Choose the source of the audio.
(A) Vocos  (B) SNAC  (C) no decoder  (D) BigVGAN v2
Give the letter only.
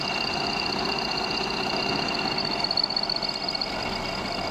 C